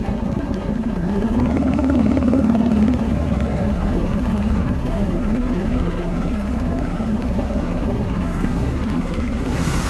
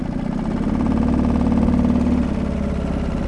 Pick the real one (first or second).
second